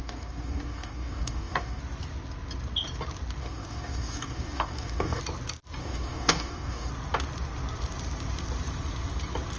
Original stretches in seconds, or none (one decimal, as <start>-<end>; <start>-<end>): 1.8-3.4; 5.2-5.8; 6.9-9.6